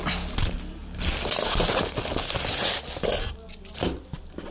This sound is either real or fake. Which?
real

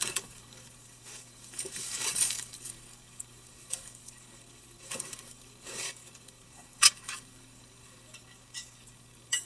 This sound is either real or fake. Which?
fake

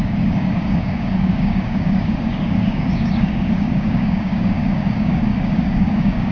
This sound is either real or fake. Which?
fake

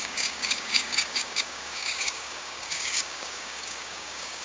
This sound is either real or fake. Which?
fake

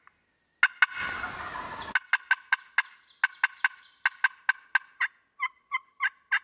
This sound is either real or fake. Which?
real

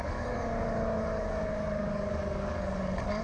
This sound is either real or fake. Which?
fake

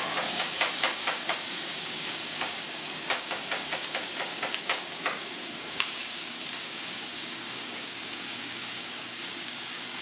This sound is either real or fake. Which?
fake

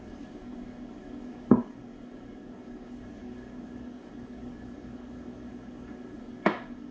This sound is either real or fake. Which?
fake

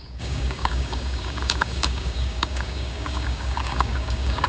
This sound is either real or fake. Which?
fake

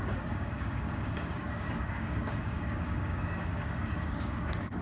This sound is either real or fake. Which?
fake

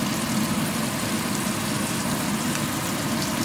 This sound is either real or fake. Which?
real